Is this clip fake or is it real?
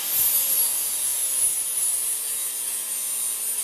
real